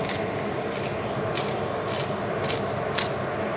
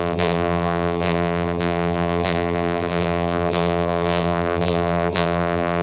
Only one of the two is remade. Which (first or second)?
second